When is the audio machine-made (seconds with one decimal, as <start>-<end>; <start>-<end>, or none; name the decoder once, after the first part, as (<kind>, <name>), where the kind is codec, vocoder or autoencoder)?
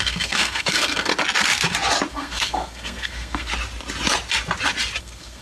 0.0-1.1 (codec, SNAC); 2.1-3.5; 5.0-5.4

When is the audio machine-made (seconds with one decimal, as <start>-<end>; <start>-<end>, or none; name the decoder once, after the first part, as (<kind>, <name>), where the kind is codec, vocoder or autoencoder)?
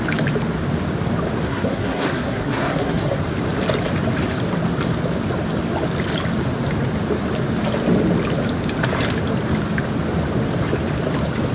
1.5-3.2 (codec, SNAC)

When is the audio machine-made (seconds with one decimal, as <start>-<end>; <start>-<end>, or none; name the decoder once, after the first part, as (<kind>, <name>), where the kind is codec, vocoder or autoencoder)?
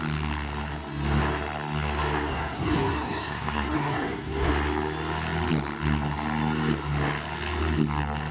2.3-4.5 (codec, SNAC)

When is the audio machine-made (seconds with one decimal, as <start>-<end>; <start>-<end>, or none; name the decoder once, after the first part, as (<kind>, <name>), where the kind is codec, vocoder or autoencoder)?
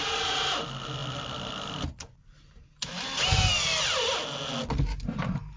none